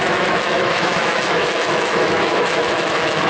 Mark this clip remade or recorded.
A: remade